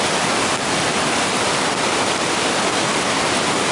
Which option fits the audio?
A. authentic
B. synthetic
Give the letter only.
A